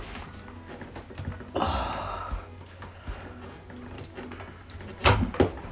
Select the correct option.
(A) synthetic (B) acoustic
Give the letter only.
B